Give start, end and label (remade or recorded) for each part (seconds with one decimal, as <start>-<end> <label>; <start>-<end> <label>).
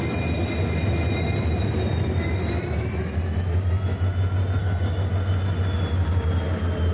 0.0-4.6 recorded; 4.6-5.1 remade; 5.1-6.9 recorded